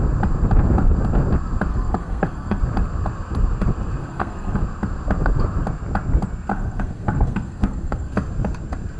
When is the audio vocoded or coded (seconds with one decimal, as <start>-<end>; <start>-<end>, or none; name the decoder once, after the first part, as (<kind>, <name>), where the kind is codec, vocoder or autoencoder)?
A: 1.7-2.6 (codec, SNAC); 4.0-4.6; 6.5-8.1